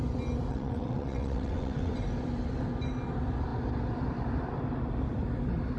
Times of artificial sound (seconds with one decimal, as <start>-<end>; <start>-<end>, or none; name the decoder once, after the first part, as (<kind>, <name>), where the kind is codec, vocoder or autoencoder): 0.5-1.9 (vocoder, WaveNeXt)